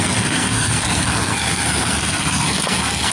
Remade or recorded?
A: remade